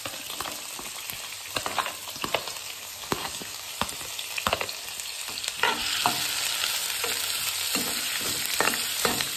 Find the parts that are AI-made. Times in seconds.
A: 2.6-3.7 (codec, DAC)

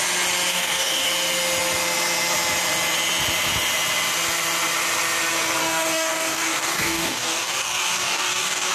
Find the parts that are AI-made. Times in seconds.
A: 0.5-1.1 (codec, DAC); 5.6-8.7